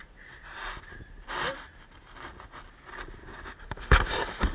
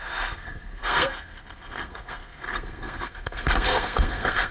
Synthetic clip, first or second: second